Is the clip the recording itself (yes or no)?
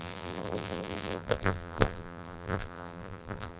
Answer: no